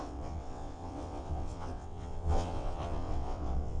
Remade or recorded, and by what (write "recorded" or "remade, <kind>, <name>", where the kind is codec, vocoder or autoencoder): remade, vocoder, WaveNeXt